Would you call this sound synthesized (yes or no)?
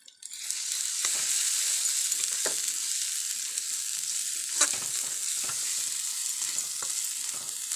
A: no